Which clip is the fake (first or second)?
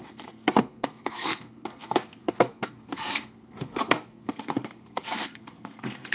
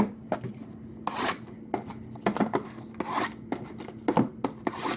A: first